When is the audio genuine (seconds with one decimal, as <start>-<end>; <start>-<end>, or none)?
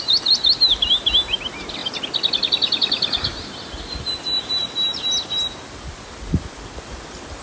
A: 0.0-7.4